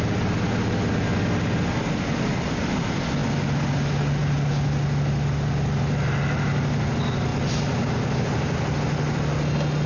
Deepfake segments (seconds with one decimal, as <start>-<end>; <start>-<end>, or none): none